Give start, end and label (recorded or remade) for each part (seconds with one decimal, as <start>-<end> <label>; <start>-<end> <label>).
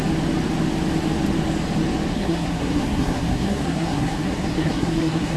0.0-2.1 recorded; 2.1-5.4 remade